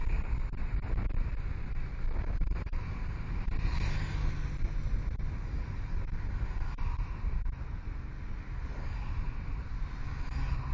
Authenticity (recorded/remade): recorded